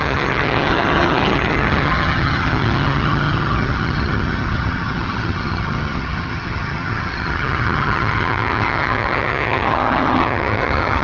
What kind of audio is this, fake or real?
fake